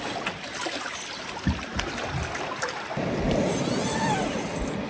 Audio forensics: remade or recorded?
recorded